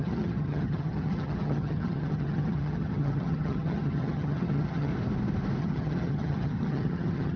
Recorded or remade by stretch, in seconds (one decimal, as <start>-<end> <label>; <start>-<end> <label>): 0.0-4.9 remade; 4.9-5.6 recorded; 5.6-7.4 remade